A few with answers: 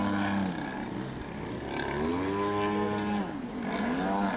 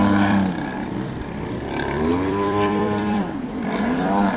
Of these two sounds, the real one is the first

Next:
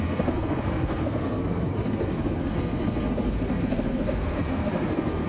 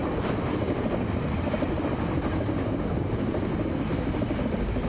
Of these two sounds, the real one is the second